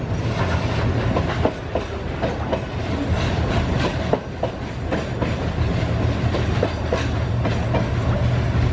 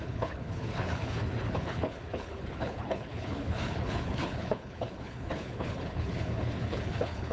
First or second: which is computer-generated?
second